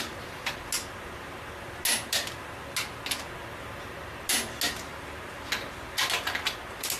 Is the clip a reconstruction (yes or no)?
no